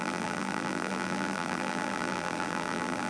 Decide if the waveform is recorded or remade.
remade